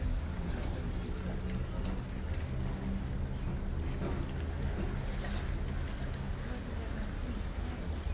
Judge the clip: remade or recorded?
recorded